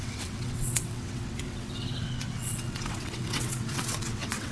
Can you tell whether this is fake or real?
fake